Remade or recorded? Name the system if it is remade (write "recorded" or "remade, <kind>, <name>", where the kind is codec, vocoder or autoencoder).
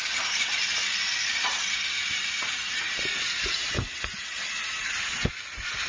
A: recorded